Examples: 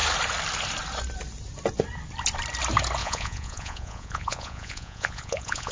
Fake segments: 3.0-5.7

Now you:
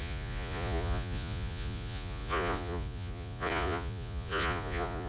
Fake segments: 0.0-5.1